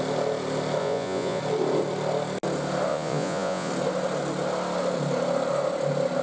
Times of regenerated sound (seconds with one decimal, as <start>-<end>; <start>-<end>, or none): 0.8-1.4; 2.9-3.7